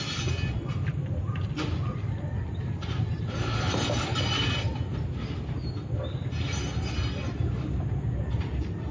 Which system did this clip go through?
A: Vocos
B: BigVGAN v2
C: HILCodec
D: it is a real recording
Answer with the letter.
D